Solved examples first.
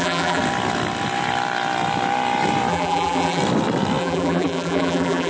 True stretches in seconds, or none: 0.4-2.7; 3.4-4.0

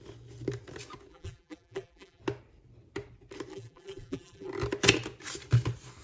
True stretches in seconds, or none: 0.0-1.1; 2.2-3.5; 4.5-6.0

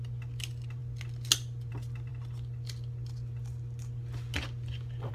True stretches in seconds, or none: 0.0-5.1